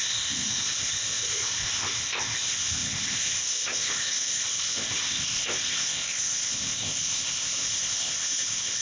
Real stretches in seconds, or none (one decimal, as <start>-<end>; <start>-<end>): none